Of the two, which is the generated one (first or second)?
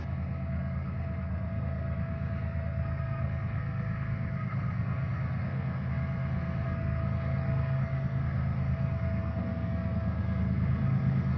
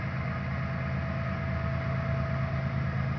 first